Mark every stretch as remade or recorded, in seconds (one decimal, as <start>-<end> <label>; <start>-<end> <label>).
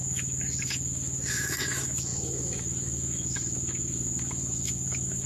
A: 0.0-5.3 remade